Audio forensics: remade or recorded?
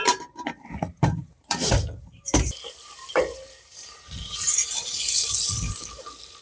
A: remade